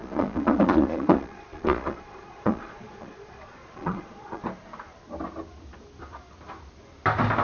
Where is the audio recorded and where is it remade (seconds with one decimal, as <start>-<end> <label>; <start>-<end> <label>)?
0.0-4.4 remade; 4.4-7.4 recorded